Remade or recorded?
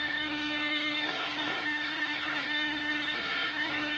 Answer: remade